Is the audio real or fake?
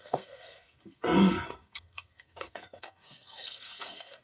fake